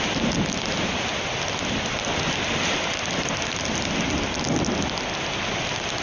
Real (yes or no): yes